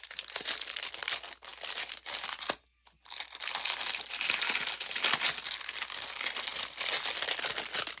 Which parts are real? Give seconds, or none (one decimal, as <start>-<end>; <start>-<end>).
0.0-6.5; 7.3-8.0